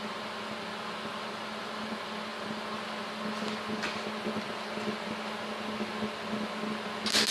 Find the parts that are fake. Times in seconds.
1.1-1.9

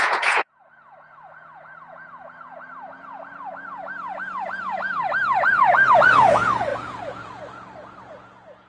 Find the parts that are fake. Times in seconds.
0.0-3.5; 5.5-8.7

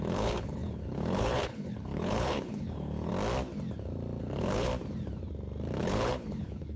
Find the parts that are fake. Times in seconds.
0.0-3.1; 4.2-4.7; 5.8-6.8

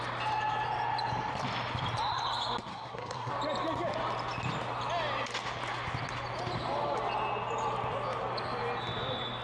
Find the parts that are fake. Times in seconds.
2.7-3.3